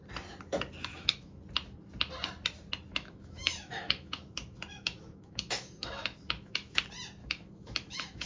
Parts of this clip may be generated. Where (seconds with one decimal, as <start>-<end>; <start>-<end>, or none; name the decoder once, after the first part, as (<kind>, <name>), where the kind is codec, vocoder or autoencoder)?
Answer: 0.9-1.4 (autoencoder, DAC-VAE); 2.9-6.8; 7.2-8.3

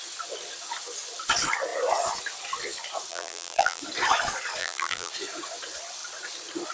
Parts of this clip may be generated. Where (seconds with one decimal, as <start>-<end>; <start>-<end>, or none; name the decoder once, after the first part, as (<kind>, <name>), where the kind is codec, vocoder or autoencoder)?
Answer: 3.1-3.8 (vocoder, BigVGAN v2); 4.6-5.1

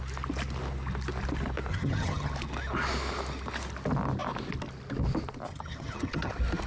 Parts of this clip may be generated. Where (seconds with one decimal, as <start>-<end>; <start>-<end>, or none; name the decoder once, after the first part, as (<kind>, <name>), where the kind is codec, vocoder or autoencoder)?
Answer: 1.7-2.3 (vocoder, HiFi-GAN); 5.5-6.3